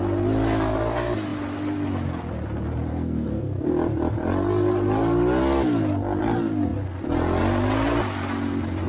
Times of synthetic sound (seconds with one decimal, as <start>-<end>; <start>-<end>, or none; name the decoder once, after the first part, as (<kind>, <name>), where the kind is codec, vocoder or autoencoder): 2.9-3.7 (codec, SNAC)